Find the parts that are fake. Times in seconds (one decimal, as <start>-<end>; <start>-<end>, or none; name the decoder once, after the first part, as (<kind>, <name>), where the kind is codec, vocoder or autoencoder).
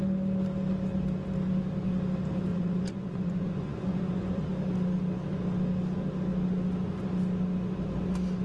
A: 2.5-4.4 (vocoder, Vocos)